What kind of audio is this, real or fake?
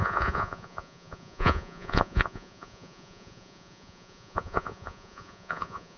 fake